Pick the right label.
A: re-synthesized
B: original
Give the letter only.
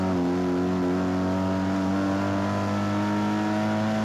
B